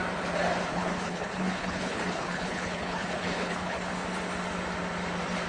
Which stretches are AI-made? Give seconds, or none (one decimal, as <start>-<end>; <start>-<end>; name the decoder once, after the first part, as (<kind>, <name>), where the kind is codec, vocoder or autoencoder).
0.7-3.9 (codec, HILCodec)